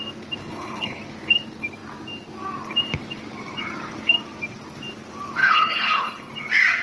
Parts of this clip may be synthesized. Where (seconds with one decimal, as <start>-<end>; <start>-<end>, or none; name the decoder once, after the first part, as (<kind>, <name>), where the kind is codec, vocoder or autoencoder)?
0.4-1.0 (codec, HILCodec); 5.4-6.3